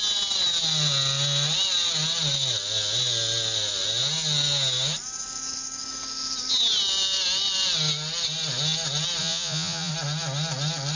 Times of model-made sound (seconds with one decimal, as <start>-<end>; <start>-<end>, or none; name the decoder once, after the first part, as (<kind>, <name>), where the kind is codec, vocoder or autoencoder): 9.2-9.9 (vocoder, Vocos)